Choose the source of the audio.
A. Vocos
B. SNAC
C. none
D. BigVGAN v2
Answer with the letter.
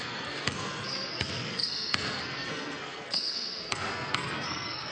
B